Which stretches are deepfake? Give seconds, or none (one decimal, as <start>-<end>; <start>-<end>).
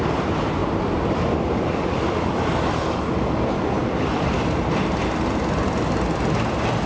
0.6-3.1